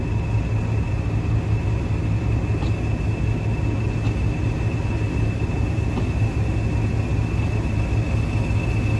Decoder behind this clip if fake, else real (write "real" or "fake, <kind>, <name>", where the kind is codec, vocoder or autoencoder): real